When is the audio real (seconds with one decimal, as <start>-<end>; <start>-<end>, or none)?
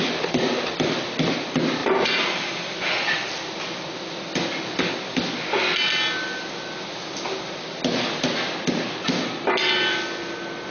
0.0-1.8; 2.9-10.7